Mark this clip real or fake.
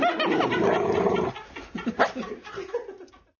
real